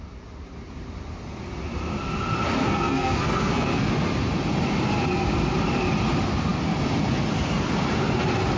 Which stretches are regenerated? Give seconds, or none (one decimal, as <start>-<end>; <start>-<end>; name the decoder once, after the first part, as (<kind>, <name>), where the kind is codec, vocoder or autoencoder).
2.6-3.9 (codec, SNAC)